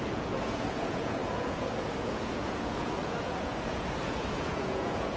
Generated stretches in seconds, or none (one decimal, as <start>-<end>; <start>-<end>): 0.0-5.2